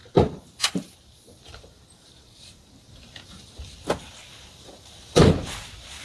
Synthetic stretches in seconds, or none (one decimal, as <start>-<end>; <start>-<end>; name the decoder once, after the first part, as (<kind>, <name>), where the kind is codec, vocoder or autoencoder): 0.0-3.6 (vocoder, BigVGAN v2); 4.3-5.2